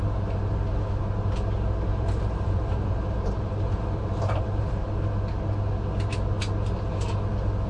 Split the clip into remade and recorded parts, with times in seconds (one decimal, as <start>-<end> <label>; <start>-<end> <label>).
0.0-1.9 recorded; 1.9-4.9 remade; 4.9-7.7 recorded